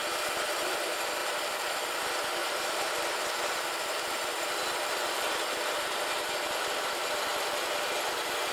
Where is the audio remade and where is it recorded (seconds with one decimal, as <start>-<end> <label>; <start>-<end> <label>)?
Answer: 0.0-1.2 recorded; 1.2-1.7 remade; 1.7-2.4 recorded; 2.4-3.2 remade; 3.2-8.5 recorded